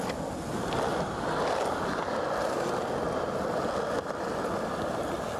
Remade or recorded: recorded